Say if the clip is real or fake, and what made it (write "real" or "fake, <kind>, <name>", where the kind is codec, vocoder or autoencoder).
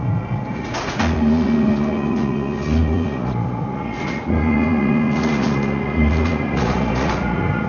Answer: fake, vocoder, Vocos